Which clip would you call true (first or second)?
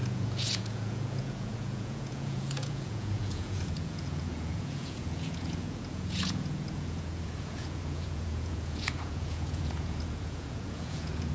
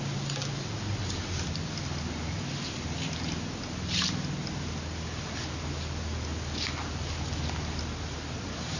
second